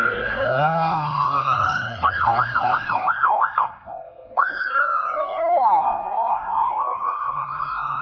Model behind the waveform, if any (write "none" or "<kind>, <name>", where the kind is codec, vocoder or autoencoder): codec, SNAC